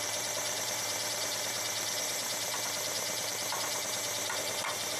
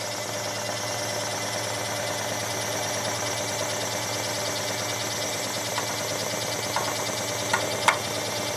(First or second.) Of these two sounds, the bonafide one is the second